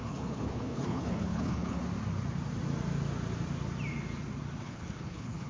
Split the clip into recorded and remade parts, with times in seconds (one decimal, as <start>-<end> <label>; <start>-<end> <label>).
0.0-1.8 remade; 1.8-4.6 recorded; 4.6-5.5 remade